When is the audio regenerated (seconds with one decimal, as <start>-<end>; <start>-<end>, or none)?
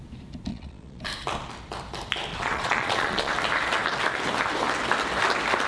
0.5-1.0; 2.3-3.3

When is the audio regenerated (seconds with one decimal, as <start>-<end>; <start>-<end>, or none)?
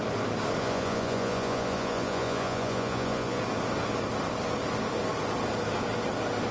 0.6-3.4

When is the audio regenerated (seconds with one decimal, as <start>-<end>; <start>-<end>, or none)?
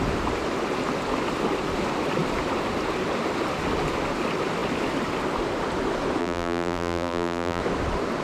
6.2-7.6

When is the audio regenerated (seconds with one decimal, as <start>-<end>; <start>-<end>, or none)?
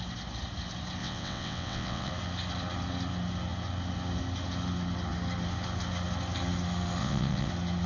1.0-2.1; 7.0-7.5